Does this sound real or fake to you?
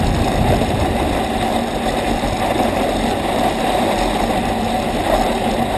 real